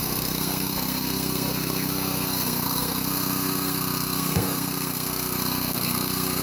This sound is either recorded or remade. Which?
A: remade